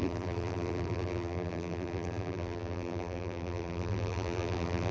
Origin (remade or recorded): remade